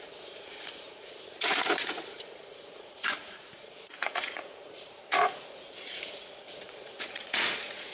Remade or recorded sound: remade